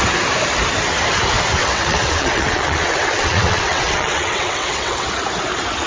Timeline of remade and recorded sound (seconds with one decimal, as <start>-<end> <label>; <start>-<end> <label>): 0.0-1.6 recorded; 1.6-5.1 remade; 5.1-5.9 recorded